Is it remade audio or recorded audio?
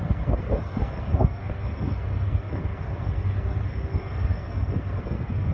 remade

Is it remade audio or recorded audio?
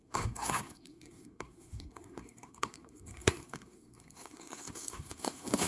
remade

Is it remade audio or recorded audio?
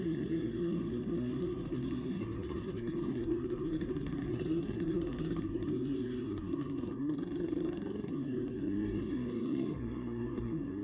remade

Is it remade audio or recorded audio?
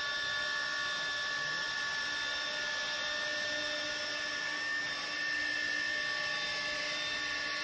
recorded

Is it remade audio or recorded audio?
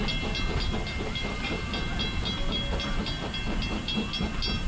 recorded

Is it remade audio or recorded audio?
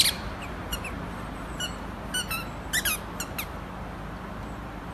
recorded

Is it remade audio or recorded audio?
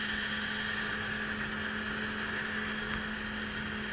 recorded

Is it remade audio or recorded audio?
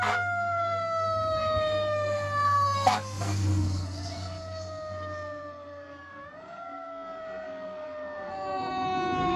remade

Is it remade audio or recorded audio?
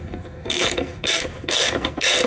remade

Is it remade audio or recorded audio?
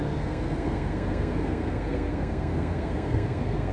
remade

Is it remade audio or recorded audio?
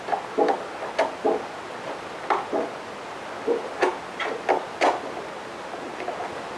recorded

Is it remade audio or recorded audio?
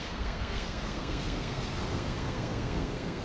remade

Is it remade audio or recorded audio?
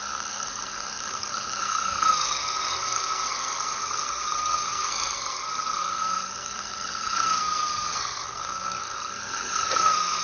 remade